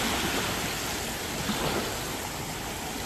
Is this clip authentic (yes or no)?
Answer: yes